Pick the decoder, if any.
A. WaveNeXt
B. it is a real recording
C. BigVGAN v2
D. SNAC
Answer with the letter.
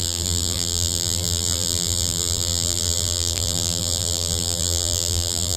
C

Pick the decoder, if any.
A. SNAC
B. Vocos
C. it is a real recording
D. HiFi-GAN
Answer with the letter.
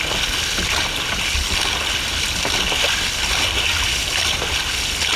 C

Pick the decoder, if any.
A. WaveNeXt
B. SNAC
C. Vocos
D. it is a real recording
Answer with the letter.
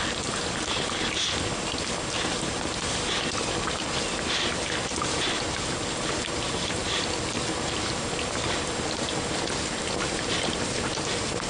D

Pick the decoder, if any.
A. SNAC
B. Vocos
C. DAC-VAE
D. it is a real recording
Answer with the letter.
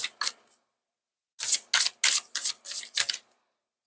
D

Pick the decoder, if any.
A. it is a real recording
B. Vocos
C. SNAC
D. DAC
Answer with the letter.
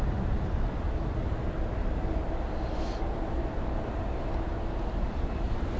A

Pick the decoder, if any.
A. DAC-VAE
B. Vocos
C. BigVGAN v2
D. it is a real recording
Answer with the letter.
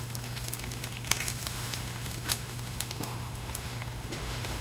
A